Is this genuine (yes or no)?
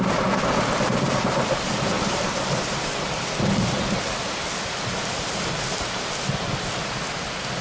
yes